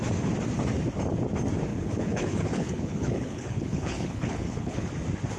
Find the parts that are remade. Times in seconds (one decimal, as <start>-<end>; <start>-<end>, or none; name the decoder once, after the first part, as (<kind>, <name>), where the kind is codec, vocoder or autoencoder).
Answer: 1.7-4.9 (codec, HILCodec)